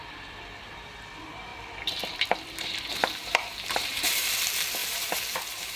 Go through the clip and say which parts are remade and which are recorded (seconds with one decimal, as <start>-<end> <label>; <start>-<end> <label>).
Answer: 0.0-3.0 recorded; 3.0-4.3 remade; 4.3-4.8 recorded; 4.8-5.8 remade